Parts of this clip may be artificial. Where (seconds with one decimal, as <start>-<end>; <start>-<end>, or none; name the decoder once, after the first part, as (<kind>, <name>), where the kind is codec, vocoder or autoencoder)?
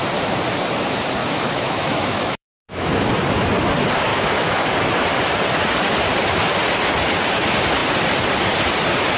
1.2-3.1 (autoencoder, DAC-VAE); 4.1-4.7